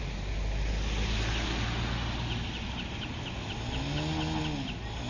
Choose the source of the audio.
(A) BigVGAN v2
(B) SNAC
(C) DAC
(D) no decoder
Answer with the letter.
D